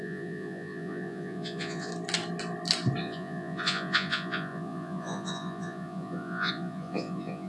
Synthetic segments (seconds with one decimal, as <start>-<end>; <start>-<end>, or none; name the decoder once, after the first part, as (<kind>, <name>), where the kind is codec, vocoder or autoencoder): 0.0-1.9 (vocoder, Vocos); 3.0-7.5